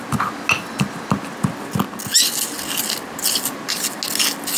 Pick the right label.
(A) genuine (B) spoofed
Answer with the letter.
A